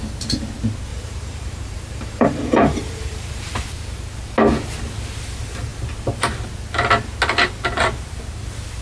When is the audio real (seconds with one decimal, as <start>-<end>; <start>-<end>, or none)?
0.0-0.9; 3.5-8.8